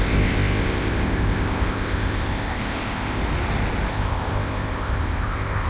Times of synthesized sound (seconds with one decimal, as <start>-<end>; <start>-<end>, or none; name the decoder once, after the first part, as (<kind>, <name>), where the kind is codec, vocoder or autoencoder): 0.0-3.2 (codec, ZipCodec); 3.9-5.7